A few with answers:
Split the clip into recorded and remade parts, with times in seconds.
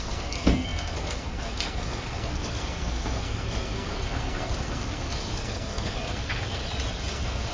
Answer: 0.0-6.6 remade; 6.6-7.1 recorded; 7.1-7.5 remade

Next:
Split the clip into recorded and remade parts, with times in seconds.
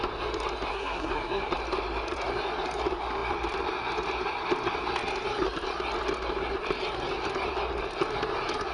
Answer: 0.0-0.7 recorded; 0.7-1.5 remade; 1.5-8.7 recorded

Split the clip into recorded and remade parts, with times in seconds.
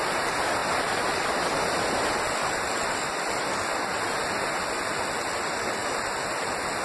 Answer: 0.0-6.8 recorded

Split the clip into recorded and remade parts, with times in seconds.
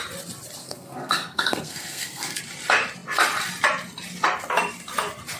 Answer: 0.0-0.6 recorded; 0.6-2.4 remade; 2.4-5.4 recorded